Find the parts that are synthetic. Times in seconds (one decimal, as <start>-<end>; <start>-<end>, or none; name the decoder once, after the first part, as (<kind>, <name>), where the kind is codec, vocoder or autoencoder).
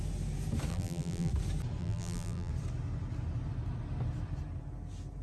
0.7-1.3 (vocoder, BigVGAN v2); 1.8-2.5